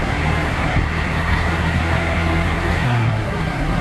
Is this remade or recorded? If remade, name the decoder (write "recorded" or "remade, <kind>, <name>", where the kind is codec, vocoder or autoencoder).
remade, codec, SNAC